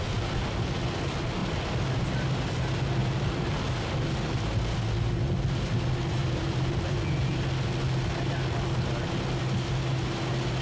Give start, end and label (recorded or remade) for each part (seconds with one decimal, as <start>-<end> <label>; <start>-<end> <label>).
0.0-3.0 recorded; 3.0-3.6 remade; 3.6-6.2 recorded; 6.2-7.0 remade; 7.0-10.6 recorded